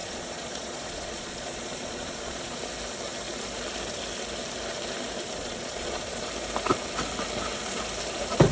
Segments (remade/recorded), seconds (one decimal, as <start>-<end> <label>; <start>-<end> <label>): 0.0-2.6 remade; 2.6-5.4 recorded; 5.4-6.2 remade; 6.2-8.5 recorded